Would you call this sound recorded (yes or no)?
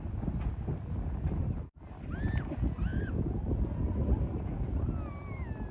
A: yes